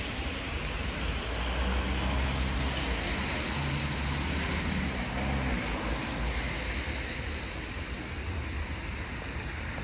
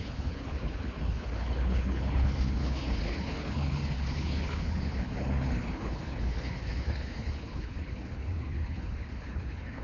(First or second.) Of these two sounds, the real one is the first